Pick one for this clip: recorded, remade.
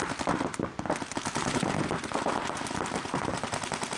recorded